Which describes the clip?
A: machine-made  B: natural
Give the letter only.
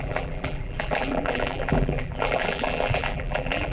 A